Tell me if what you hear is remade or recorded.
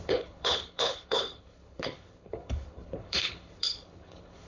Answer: remade